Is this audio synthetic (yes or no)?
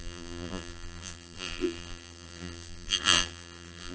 yes